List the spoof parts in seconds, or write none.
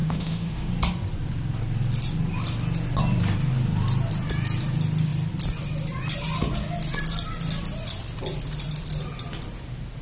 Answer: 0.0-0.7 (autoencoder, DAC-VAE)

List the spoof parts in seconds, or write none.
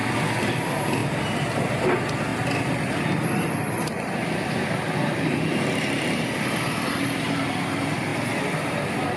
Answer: none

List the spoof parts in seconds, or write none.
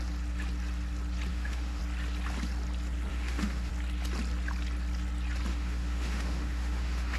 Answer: 1.3-1.8 (autoencoder, DAC-VAE); 3.1-3.7; 5.5-7.2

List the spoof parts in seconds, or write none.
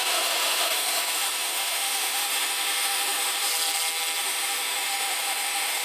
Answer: 0.0-3.5 (autoencoder, DAC-VAE); 4.2-5.8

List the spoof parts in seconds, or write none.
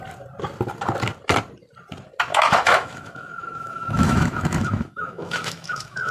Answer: 2.3-6.1 (autoencoder, DAC-VAE)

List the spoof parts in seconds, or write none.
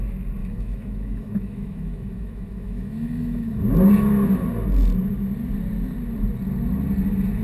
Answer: 0.4-3.6 (autoencoder, DAC-VAE)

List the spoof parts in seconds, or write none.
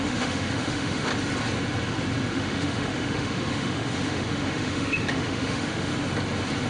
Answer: 0.0-1.1 (autoencoder, DAC-VAE); 2.3-5.9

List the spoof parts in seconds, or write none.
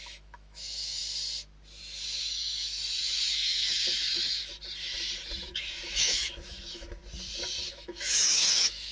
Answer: 0.0-1.0 (autoencoder, DAC-VAE); 2.2-4.5; 5.5-7.0; 7.7-8.9